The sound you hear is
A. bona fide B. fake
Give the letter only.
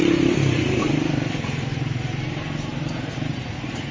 B